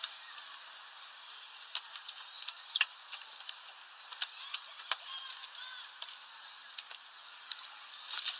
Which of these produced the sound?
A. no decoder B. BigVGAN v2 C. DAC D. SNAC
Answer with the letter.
B